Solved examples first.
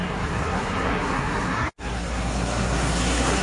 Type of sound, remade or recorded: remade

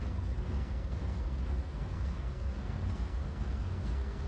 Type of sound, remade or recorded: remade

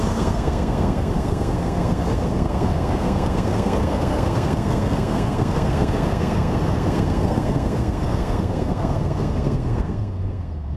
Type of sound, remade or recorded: remade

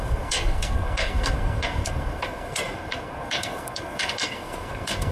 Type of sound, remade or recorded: remade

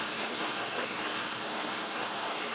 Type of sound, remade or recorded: remade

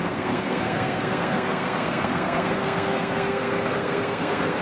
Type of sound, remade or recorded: remade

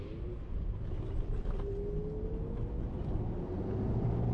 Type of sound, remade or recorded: recorded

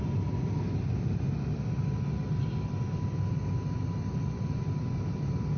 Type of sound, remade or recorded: recorded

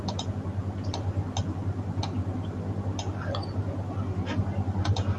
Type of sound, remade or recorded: recorded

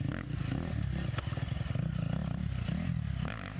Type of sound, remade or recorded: recorded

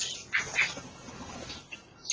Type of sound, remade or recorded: recorded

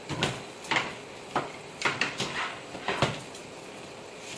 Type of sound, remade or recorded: recorded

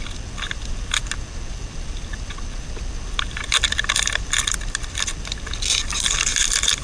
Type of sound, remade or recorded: recorded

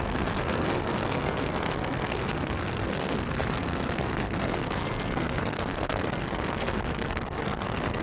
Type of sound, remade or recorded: remade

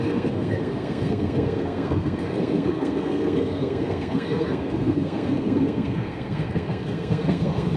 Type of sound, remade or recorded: remade